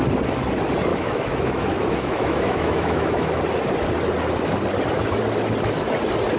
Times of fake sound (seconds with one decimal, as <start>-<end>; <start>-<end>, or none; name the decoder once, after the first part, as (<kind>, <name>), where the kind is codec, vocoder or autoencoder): 0.9-3.4 (autoencoder, DAC-VAE)